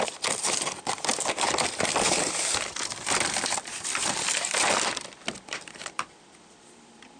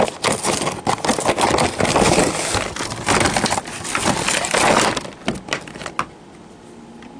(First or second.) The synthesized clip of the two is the first